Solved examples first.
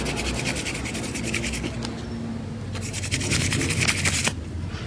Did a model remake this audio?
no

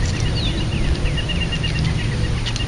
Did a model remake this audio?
no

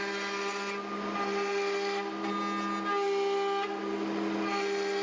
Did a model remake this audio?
no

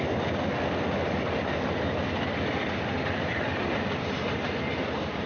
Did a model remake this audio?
no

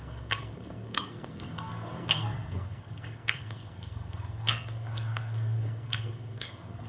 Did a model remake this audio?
yes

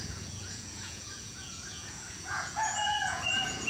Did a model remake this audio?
yes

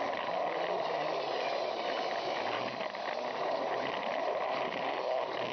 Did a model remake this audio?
no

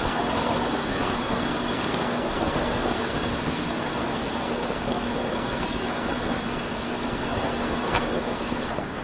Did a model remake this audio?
yes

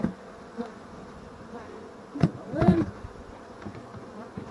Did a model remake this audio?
yes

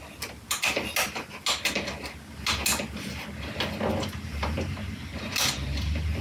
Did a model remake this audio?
no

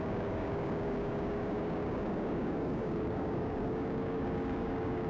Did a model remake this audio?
yes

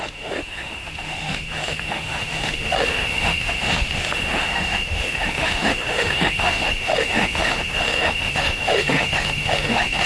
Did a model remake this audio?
yes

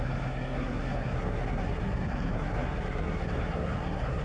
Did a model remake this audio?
yes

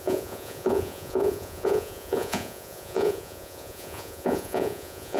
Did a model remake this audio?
yes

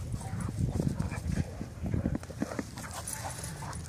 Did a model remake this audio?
no